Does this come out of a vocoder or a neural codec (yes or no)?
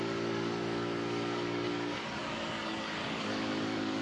yes